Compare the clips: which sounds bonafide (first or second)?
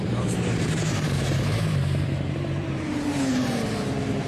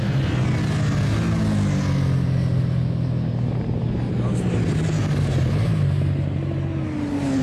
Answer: second